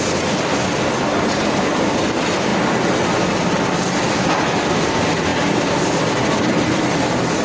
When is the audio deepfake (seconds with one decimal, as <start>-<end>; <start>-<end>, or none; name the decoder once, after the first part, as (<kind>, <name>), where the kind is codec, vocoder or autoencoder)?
none